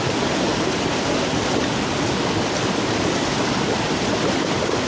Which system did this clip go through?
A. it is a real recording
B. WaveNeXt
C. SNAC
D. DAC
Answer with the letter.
A